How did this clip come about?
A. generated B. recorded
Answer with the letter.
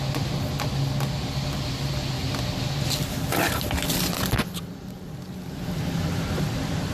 B